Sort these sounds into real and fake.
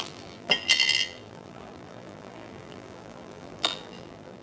fake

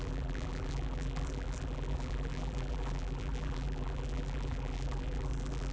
fake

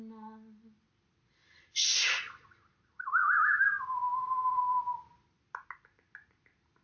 real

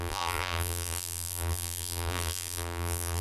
fake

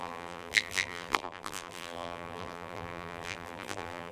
fake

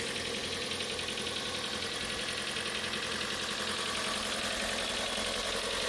real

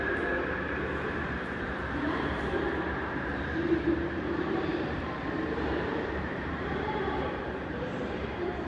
fake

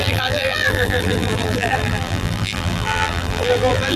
fake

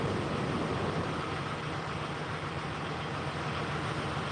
real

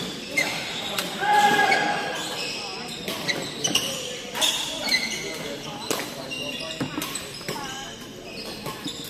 fake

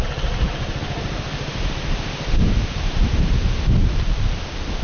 fake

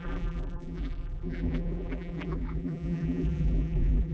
fake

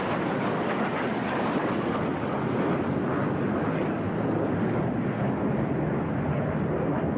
real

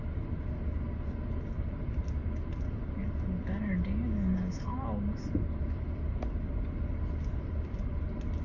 real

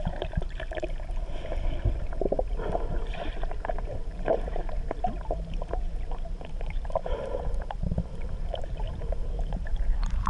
fake